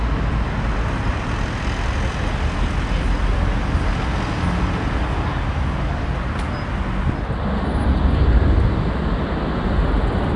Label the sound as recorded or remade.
recorded